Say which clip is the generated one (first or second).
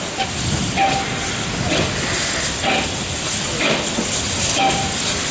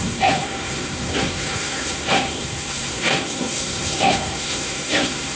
second